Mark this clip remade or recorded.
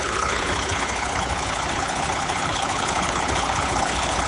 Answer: remade